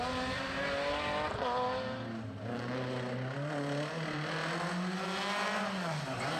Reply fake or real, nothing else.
real